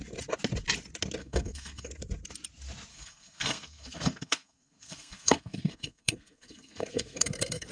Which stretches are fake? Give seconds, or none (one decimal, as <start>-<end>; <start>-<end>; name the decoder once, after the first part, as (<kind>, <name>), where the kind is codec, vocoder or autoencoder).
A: 1.2-1.9 (codec, SNAC); 2.9-7.7